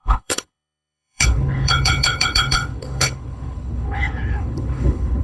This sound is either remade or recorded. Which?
remade